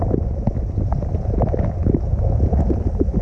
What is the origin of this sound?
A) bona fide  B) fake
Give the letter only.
A